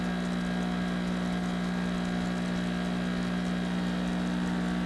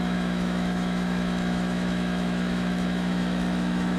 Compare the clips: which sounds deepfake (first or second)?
second